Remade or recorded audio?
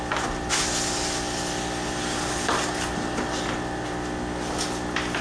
recorded